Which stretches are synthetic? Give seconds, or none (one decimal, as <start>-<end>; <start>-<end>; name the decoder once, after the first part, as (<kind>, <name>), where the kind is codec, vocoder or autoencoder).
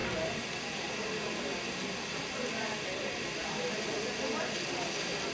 none